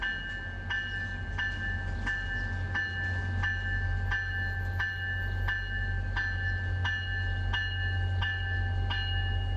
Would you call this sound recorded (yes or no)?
yes